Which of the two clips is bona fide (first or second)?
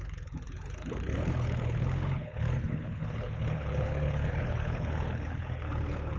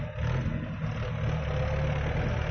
second